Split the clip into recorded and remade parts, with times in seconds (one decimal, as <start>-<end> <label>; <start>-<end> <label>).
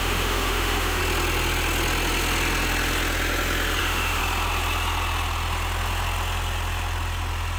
0.0-1.0 remade; 1.0-3.8 recorded; 3.8-4.2 remade; 4.2-7.6 recorded